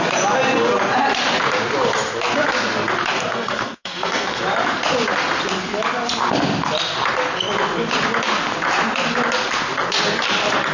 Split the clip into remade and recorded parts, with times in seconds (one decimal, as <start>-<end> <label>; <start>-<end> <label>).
0.0-3.3 recorded; 3.3-4.4 remade; 4.4-10.7 recorded